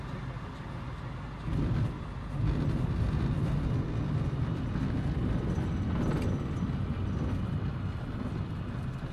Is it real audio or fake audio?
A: real